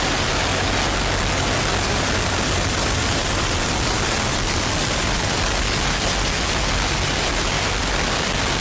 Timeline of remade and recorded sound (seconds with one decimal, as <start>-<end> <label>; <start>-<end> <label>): 0.0-0.5 remade; 0.5-1.9 recorded; 1.9-7.8 remade; 7.8-8.6 recorded